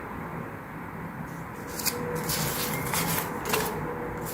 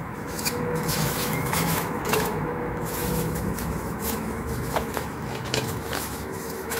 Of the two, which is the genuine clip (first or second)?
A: first